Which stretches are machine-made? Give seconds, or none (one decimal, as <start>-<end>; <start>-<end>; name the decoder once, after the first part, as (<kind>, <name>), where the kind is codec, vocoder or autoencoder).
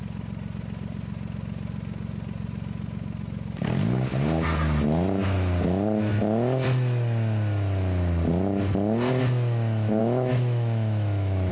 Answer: 10.0-11.5 (autoencoder, DAC-VAE)